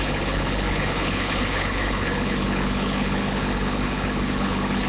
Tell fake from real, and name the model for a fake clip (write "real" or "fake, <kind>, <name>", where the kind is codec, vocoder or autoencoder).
fake, codec, HILCodec